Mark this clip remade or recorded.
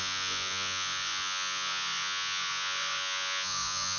remade